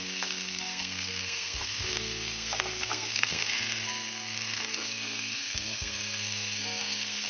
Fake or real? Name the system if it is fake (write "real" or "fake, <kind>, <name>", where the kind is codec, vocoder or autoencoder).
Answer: fake, codec, SNAC